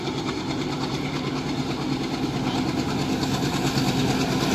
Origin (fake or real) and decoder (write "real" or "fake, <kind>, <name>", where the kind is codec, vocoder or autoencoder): real